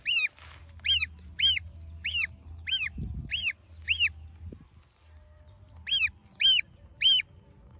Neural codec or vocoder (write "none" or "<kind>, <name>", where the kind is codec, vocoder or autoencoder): none